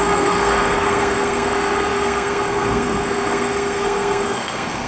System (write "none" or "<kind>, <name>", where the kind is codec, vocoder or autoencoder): codec, SNAC